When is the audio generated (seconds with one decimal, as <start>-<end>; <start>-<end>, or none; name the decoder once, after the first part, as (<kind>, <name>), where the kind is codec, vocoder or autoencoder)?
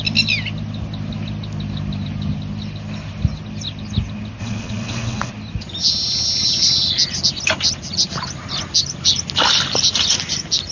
4.4-5.3 (vocoder, WaveNeXt)